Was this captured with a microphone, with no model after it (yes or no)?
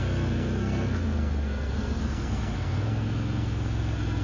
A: no